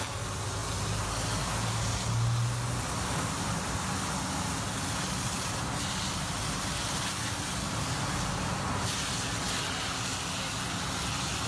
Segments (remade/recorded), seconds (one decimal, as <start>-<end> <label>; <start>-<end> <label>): 0.0-11.5 recorded